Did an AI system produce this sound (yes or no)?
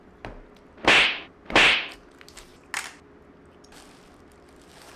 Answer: no